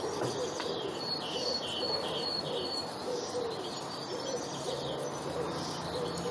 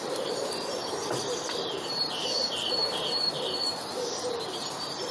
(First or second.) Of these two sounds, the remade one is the second